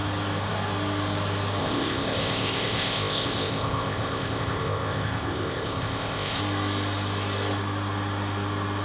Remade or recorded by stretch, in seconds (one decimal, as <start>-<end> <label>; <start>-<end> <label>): 0.0-1.6 recorded; 1.6-6.4 remade; 6.4-8.8 recorded